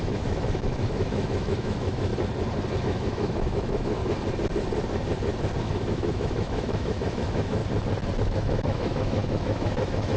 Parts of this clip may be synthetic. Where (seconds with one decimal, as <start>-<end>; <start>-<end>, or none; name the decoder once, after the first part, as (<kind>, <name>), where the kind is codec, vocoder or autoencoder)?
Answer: 0.0-2.1 (autoencoder, DAC-VAE); 2.8-4.0; 5.6-7.6; 8.2-10.2